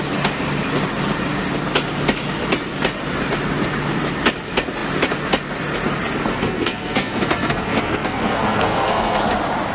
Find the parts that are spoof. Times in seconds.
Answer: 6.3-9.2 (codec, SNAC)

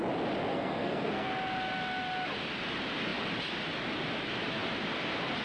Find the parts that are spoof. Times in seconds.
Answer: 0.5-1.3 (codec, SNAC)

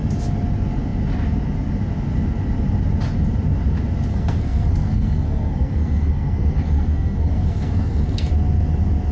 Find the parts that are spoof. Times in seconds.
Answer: 4.1-8.3 (codec, SNAC)

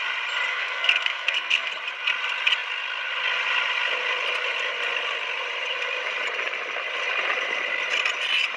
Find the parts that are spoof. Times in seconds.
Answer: 0.5-1.7 (codec, SNAC)

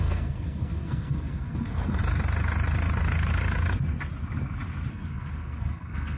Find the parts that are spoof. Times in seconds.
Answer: 0.0-2.0 (codec, SNAC); 4.9-6.2

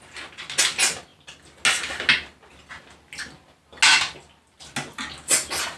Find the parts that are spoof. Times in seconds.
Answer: none